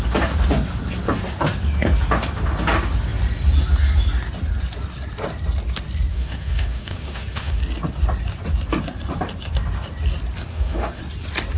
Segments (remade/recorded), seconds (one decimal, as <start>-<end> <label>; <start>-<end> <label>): 0.0-6.1 recorded; 6.1-7.6 remade; 7.6-10.5 recorded; 10.5-11.0 remade; 11.0-11.6 recorded